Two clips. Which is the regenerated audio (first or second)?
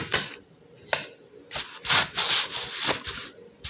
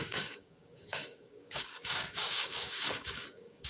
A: second